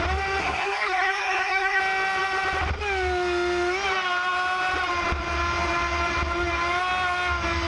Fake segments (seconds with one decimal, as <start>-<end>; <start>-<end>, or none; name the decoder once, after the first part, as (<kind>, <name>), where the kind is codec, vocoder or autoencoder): 0.4-1.8 (codec, SNAC)